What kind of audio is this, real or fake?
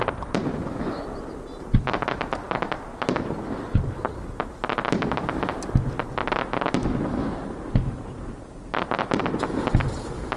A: real